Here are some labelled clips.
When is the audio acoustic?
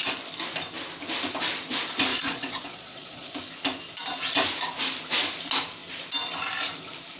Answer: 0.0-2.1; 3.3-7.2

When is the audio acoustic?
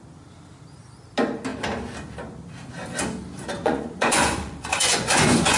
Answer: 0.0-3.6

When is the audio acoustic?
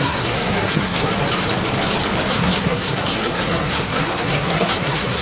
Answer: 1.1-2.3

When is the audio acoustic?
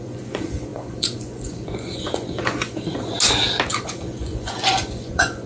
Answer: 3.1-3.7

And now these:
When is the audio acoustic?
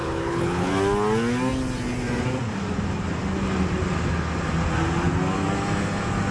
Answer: 0.7-6.3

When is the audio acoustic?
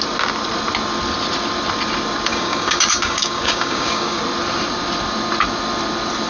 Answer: 0.0-2.3; 4.2-6.3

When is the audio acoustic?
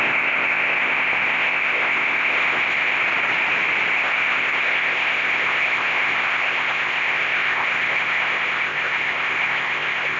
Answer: 3.0-3.9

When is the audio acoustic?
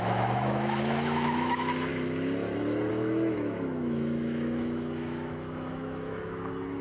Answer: 1.9-2.9